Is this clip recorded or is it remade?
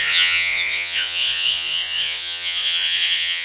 remade